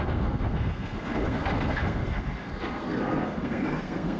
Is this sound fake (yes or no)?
yes